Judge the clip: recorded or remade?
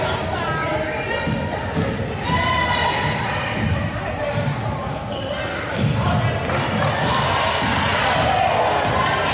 recorded